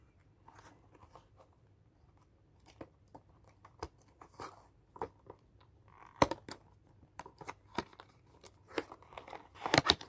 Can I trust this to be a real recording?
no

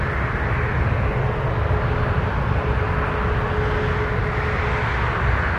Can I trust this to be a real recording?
yes